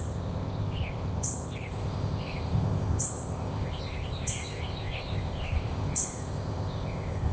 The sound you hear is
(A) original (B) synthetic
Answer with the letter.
B